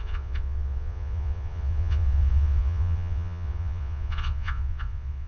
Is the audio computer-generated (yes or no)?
yes